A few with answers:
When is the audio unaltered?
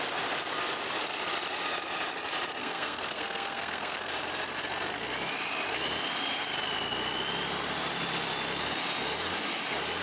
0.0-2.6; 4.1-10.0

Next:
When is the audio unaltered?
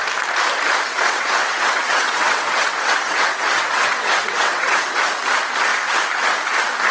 0.0-0.9; 5.0-6.9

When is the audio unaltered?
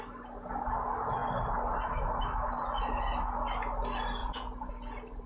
0.0-4.2; 4.7-5.3